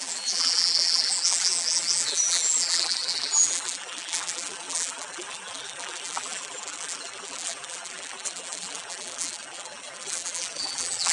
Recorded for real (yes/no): no